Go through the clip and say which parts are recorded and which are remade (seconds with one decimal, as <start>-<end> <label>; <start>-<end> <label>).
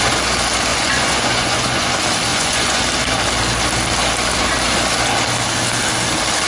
0.0-0.7 recorded; 0.7-1.9 remade; 1.9-2.3 recorded; 2.3-2.8 remade; 2.8-6.5 recorded